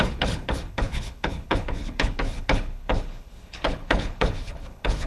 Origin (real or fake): fake